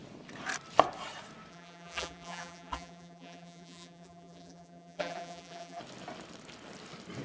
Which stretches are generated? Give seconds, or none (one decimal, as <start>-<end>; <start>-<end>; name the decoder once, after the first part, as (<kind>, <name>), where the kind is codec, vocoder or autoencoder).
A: 1.5-5.8 (vocoder, BigVGAN v2)